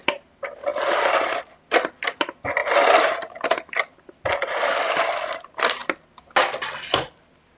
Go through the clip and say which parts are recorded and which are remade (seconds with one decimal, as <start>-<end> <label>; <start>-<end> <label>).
0.0-7.6 recorded